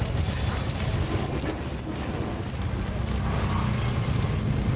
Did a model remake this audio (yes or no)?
no